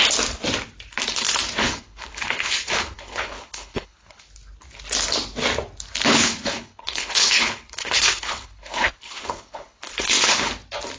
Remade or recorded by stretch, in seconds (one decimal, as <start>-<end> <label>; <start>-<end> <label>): 0.0-1.6 recorded; 1.6-4.2 remade; 4.2-6.1 recorded; 6.1-10.5 remade; 10.5-11.0 recorded

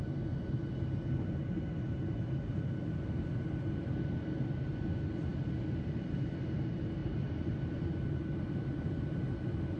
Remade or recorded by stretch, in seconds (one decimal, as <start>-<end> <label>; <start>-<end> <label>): 0.0-9.8 recorded

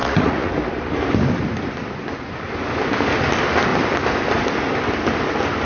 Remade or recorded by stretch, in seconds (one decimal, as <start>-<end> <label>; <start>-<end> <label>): 0.0-0.5 remade; 0.5-5.7 recorded

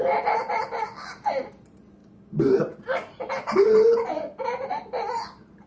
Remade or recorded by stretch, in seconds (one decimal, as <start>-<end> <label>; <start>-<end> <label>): 0.0-5.7 recorded

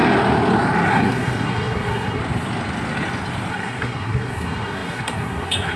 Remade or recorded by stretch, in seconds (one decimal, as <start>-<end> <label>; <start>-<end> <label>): 0.0-0.9 recorded; 0.9-2.2 remade; 2.2-3.5 recorded; 3.5-5.8 remade

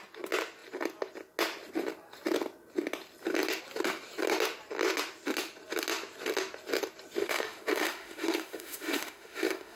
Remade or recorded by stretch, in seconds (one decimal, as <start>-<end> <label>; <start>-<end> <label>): 0.0-7.2 recorded; 7.2-9.8 remade

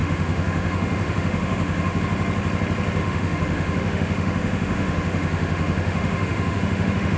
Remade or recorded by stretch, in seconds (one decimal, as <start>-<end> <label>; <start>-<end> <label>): 0.0-2.0 remade; 2.0-3.0 recorded; 3.0-7.2 remade

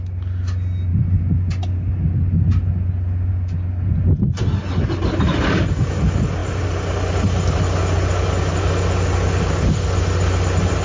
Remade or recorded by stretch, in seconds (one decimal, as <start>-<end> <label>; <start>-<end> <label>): 0.0-10.8 recorded